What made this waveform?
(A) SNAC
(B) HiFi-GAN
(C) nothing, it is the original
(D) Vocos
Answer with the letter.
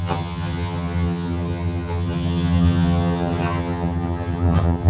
B